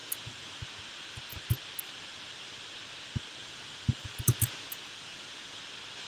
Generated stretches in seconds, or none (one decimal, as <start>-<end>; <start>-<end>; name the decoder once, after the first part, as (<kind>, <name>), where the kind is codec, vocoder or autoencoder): 0.0-0.6 (vocoder, Vocos); 3.4-5.6